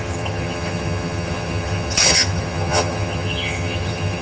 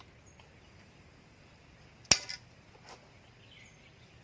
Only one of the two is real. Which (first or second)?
second